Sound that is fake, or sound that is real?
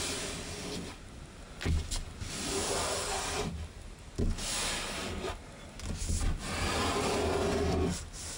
real